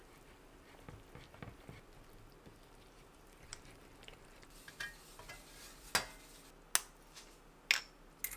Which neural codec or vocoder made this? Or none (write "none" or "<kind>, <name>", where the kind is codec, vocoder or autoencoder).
none